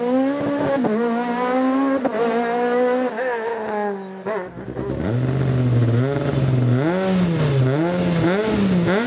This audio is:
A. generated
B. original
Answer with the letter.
B